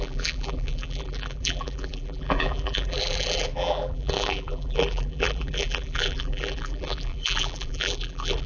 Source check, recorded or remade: remade